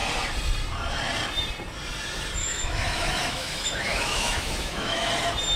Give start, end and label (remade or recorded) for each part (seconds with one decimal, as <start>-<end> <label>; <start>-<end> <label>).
0.0-2.4 recorded; 2.4-5.1 remade; 5.1-5.6 recorded

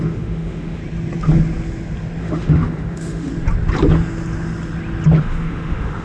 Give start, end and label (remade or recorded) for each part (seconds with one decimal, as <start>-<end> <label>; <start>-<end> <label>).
0.0-0.8 remade; 0.8-2.2 recorded; 2.2-3.3 remade; 3.3-5.2 recorded; 5.2-6.0 remade

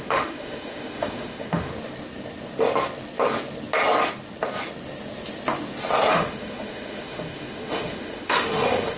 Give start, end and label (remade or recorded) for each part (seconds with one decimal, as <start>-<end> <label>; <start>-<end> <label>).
0.0-1.7 remade; 1.7-6.1 recorded; 6.1-9.0 remade

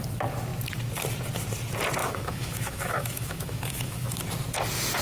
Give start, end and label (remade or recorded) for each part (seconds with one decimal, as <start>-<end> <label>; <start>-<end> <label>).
0.0-2.0 recorded; 2.0-4.2 remade; 4.2-5.0 recorded

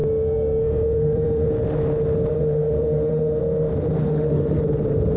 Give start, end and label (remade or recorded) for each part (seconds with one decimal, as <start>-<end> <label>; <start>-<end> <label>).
0.0-1.5 remade; 1.5-2.3 recorded; 2.3-3.4 remade; 3.4-4.0 recorded; 4.0-4.6 remade; 4.6-5.2 recorded

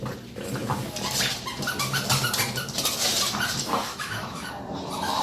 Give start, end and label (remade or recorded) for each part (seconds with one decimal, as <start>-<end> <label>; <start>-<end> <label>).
0.0-3.9 recorded; 3.9-4.5 remade; 4.5-5.2 recorded

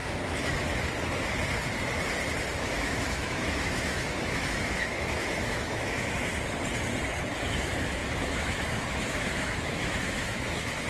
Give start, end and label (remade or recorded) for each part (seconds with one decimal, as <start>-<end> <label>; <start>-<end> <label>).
0.0-2.6 recorded; 2.6-6.3 remade; 6.3-7.4 recorded; 7.4-10.9 remade